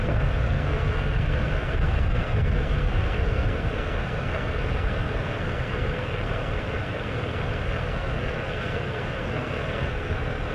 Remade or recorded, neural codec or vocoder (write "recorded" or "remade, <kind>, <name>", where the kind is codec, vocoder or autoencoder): remade, codec, SNAC